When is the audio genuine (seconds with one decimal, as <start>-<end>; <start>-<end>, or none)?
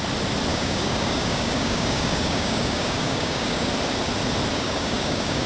0.0-0.5; 3.7-4.5